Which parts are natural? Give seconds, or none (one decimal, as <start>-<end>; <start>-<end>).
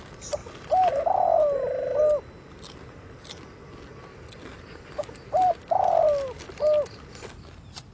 0.0-4.5; 5.6-7.9